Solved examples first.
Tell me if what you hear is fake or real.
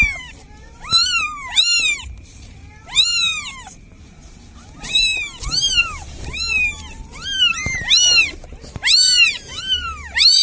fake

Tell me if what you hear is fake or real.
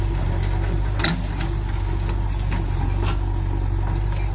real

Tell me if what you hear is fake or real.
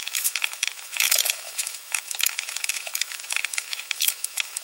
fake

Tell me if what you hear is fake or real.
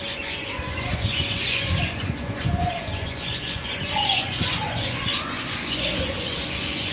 fake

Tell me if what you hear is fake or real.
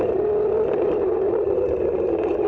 real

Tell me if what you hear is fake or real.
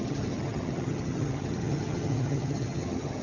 fake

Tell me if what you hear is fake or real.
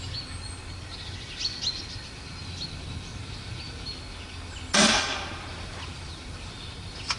real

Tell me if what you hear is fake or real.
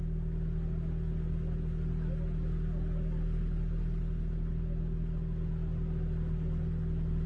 real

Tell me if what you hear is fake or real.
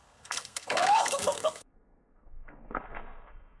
fake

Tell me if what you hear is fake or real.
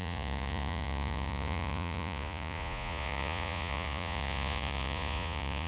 fake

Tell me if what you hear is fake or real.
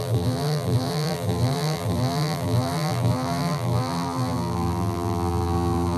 fake